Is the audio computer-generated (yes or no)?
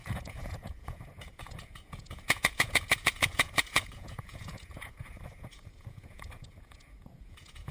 yes